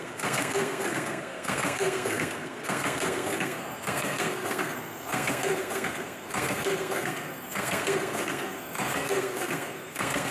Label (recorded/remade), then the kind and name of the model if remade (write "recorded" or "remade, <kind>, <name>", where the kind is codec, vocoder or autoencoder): remade, codec, SNAC